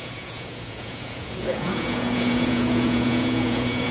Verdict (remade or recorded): remade